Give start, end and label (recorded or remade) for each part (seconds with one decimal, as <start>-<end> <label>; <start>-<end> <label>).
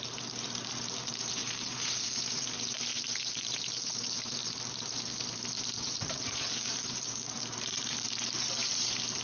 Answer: 0.0-9.2 remade